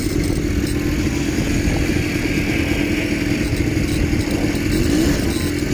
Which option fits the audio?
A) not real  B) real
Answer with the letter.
B